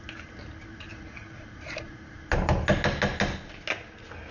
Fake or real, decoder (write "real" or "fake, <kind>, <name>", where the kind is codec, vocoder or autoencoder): real